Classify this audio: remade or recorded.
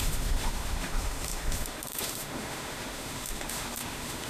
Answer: remade